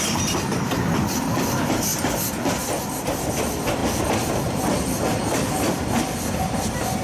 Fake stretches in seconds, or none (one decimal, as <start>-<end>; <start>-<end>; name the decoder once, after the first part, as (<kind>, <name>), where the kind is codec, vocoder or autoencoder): 0.0-1.9 (vocoder, BigVGAN v2); 3.0-3.8; 5.7-7.0